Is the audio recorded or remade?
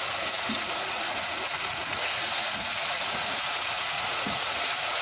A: remade